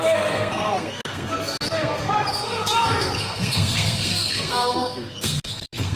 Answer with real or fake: fake